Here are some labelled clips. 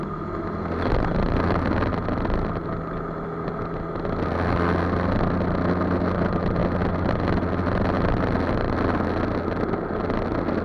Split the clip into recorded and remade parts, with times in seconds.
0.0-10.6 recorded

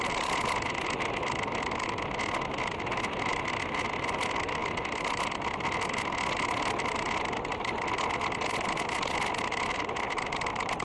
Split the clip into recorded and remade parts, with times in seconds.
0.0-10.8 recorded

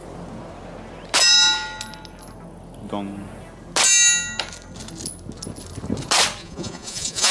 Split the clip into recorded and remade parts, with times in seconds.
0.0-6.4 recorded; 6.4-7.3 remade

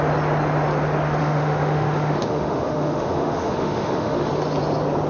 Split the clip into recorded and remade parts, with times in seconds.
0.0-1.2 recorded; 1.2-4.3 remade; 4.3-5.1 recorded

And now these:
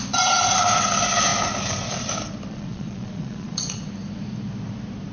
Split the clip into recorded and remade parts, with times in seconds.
0.0-2.5 recorded; 2.5-3.8 remade; 3.8-5.1 recorded

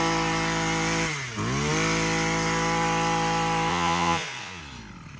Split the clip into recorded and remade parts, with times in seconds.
0.0-3.7 recorded; 3.7-4.6 remade; 4.6-5.2 recorded

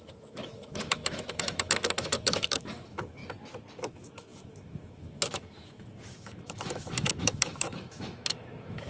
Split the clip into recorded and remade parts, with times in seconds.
0.0-3.2 remade; 3.2-3.8 recorded; 3.8-8.9 remade

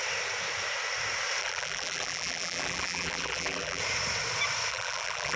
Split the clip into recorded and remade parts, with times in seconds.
0.0-1.4 recorded; 1.4-3.8 remade; 3.8-4.7 recorded; 4.7-5.4 remade